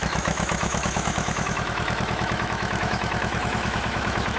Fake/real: fake